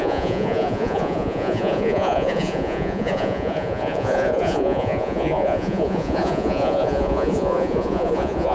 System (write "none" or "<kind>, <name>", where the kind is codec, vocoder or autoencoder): vocoder, Vocos